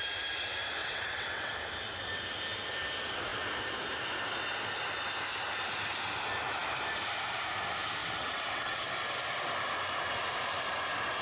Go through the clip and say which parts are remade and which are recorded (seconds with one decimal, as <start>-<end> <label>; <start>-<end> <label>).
0.0-0.8 recorded; 0.8-1.5 remade; 1.5-8.0 recorded; 8.0-8.9 remade; 8.9-11.2 recorded